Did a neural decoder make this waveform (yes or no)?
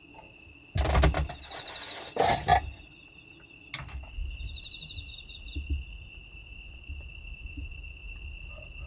no